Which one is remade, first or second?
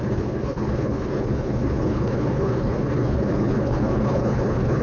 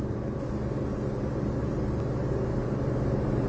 first